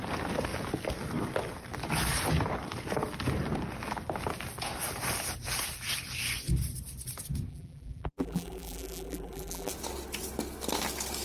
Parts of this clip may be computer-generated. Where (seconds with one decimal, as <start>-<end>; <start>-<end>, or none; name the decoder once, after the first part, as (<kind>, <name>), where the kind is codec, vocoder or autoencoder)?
7.5-9.7 (vocoder, BigVGAN v2)

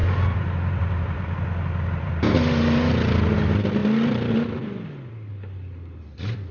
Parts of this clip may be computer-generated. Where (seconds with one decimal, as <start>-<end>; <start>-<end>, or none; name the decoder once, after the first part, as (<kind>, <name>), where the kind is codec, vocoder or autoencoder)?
0.0-2.2 (vocoder, BigVGAN v2)

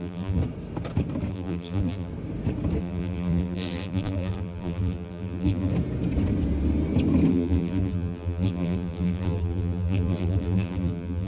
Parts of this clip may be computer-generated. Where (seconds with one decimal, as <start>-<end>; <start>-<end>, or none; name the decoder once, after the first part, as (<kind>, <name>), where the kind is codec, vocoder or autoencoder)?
0.0-0.4 (vocoder, BigVGAN v2); 1.3-2.1; 2.8-5.7; 7.3-11.3

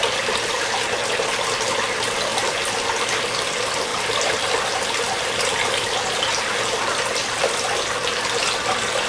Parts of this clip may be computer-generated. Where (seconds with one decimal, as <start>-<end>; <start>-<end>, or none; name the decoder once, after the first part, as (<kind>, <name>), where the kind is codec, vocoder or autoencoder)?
3.9-6.2 (vocoder, BigVGAN v2)

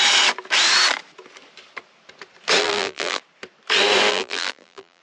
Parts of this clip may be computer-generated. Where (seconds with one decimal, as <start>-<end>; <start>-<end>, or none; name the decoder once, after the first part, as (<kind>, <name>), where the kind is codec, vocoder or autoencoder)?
2.6-3.2 (vocoder, BigVGAN v2); 4.1-5.0

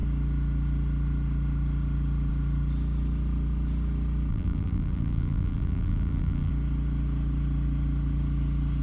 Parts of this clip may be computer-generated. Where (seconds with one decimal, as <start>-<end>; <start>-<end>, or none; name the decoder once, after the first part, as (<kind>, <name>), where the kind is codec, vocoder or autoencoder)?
4.3-6.5 (vocoder, BigVGAN v2)

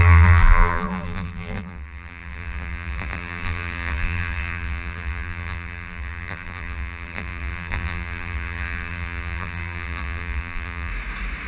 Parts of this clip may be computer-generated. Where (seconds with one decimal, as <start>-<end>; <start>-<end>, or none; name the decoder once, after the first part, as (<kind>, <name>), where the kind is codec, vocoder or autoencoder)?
0.0-10.9 (vocoder, BigVGAN v2)

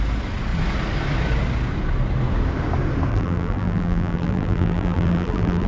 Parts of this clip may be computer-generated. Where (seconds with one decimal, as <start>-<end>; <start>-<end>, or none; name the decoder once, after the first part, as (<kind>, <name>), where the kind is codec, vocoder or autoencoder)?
3.1-5.7 (vocoder, BigVGAN v2)